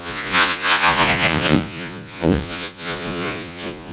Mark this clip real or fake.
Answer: fake